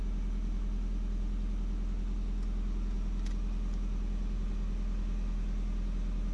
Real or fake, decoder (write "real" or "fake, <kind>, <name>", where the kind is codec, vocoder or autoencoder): real